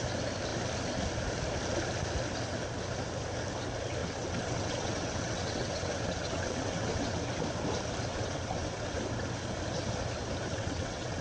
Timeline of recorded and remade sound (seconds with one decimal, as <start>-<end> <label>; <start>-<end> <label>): 0.0-4.0 recorded; 4.0-7.2 remade; 7.2-8.1 recorded; 8.1-9.0 remade; 9.0-10.5 recorded; 10.5-11.2 remade